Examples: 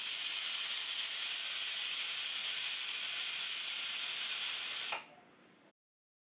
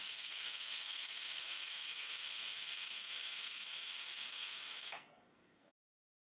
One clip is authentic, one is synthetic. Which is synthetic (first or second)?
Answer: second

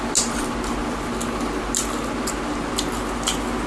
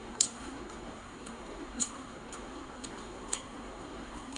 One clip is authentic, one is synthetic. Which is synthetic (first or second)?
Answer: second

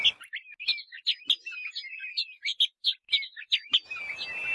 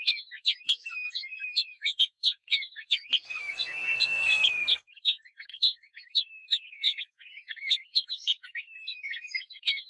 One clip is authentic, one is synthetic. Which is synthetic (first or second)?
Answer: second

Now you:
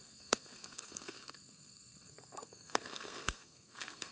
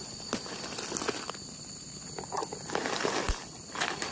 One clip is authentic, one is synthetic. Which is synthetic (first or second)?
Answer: first